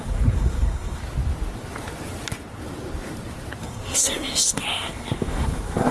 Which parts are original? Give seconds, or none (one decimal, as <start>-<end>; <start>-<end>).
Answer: 1.0-3.6

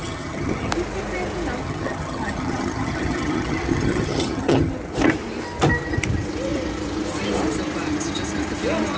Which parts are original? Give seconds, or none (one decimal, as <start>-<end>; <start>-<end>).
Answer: 0.7-1.6; 4.7-9.0

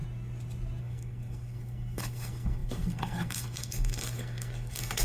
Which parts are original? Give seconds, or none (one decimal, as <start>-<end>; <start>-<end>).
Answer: 0.0-0.8

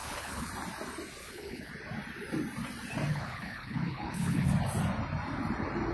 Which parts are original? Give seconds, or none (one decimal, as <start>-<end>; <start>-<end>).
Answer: 0.5-1.2; 1.7-3.1; 4.5-5.9